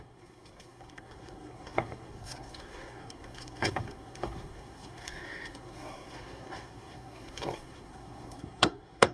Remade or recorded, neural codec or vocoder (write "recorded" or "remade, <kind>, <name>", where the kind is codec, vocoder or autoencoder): remade, codec, SNAC